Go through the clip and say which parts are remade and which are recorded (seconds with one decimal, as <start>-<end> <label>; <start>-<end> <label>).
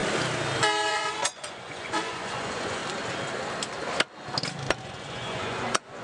0.0-0.9 recorded; 0.9-2.8 remade; 2.8-4.8 recorded; 4.8-6.0 remade